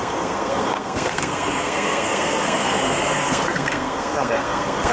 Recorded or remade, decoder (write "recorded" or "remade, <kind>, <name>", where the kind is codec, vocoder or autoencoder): remade, codec, SNAC